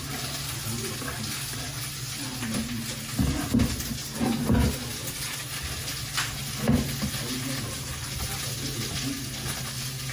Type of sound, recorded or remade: recorded